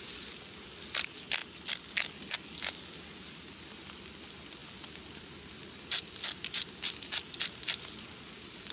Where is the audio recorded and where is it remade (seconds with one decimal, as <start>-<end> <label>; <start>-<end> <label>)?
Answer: 0.0-8.7 recorded

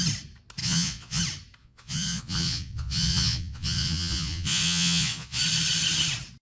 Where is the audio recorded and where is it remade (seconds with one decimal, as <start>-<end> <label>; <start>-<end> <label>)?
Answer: 0.0-0.6 recorded; 0.6-1.2 remade; 1.2-1.6 recorded; 1.6-5.4 remade; 5.4-6.4 recorded

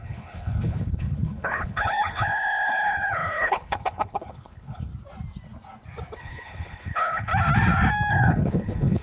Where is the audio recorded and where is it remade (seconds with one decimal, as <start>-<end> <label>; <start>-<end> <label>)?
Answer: 0.0-4.9 remade; 4.9-6.2 recorded; 6.2-7.3 remade; 7.3-8.1 recorded; 8.1-9.0 remade

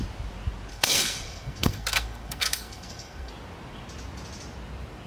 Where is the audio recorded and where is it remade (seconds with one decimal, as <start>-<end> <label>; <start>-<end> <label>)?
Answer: 0.0-0.7 recorded; 0.7-3.3 remade; 3.3-5.1 recorded

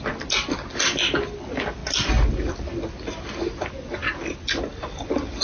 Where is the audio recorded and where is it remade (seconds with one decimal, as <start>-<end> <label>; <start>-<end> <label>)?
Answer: 0.0-5.4 recorded

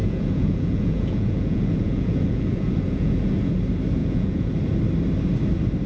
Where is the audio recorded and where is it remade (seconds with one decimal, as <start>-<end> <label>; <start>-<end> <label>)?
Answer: 0.0-3.5 remade; 3.5-4.0 recorded; 4.0-4.5 remade; 4.5-5.9 recorded

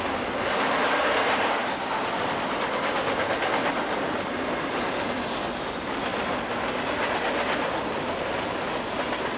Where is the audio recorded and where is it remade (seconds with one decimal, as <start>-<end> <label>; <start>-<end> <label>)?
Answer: 0.0-9.4 recorded